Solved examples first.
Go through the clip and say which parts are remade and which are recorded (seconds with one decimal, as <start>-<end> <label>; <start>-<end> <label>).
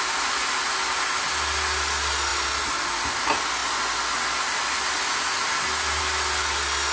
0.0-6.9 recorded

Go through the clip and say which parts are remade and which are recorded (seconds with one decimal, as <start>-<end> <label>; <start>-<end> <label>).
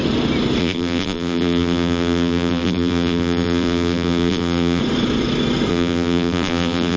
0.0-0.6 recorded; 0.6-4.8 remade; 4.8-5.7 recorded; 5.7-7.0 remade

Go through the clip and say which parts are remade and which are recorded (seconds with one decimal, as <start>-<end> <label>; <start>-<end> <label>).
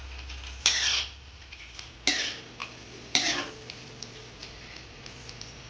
0.0-2.6 recorded; 2.6-3.4 remade; 3.4-4.4 recorded; 4.4-5.0 remade; 5.0-5.7 recorded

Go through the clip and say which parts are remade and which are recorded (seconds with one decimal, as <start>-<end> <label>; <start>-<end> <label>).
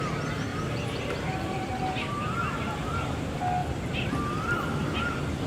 0.0-0.5 recorded; 0.5-1.2 remade; 1.2-5.5 recorded